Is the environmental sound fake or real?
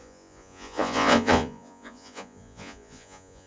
fake